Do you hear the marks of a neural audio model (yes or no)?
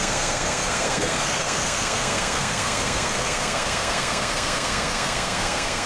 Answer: yes